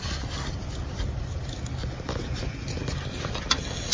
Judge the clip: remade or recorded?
recorded